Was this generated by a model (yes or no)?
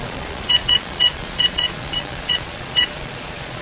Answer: yes